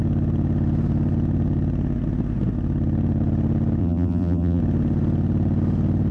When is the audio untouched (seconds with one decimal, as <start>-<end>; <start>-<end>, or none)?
0.0-3.8; 4.6-6.1